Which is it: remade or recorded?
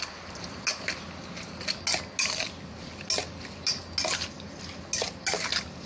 recorded